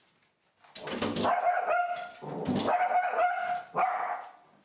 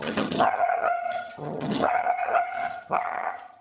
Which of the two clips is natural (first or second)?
first